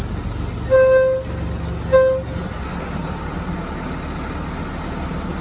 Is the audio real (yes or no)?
yes